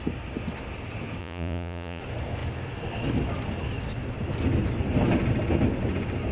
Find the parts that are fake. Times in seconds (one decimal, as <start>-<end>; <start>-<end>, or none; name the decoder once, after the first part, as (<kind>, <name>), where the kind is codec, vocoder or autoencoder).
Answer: 1.2-2.0 (vocoder, Vocos)